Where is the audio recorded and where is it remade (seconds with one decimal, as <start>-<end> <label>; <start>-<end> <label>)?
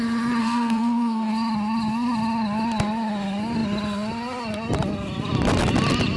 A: 0.0-0.4 recorded; 0.4-1.3 remade; 1.3-6.2 recorded